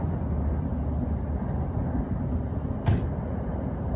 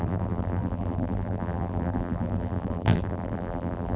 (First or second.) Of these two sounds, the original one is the first